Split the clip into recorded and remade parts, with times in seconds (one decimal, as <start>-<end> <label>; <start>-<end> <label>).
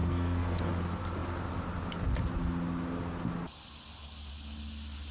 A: 0.0-0.7 remade; 0.7-5.1 recorded